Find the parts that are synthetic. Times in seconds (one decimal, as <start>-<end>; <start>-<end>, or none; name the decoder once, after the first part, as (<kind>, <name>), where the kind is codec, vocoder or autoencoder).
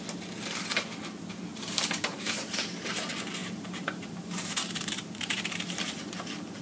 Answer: 1.5-3.0 (vocoder, BigVGAN v2); 3.4-5.5